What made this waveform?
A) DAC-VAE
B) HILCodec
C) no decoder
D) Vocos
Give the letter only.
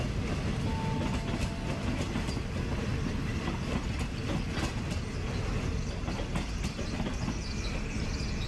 C